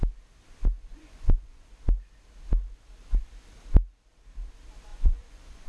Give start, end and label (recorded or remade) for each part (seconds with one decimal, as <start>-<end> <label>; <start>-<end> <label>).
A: 0.0-0.9 recorded; 0.9-1.7 remade; 1.7-4.9 recorded; 4.9-5.7 remade

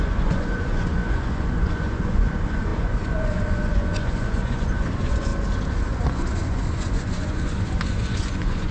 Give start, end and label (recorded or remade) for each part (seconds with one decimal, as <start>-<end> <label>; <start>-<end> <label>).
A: 0.0-5.3 remade; 5.3-5.8 recorded; 5.8-8.7 remade